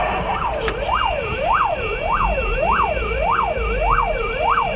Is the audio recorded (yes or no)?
no